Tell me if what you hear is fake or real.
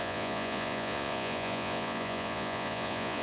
fake